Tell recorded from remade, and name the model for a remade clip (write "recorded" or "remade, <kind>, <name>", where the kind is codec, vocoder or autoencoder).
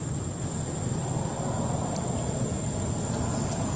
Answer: recorded